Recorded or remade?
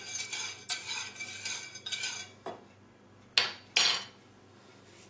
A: recorded